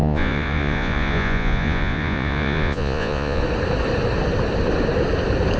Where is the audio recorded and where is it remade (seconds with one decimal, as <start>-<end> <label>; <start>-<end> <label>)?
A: 0.0-3.4 remade; 3.4-5.6 recorded